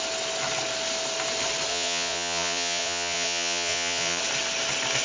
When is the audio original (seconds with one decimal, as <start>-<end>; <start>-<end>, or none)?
0.0-1.7; 4.2-5.0